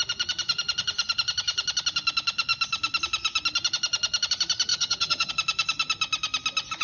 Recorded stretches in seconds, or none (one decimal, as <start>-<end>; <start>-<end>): 0.0-4.7; 5.3-6.8